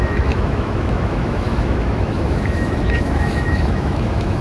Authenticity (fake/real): fake